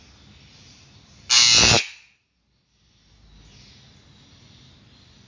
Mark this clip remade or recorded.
recorded